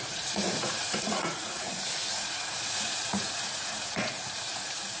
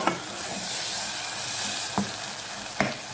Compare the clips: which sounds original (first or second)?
second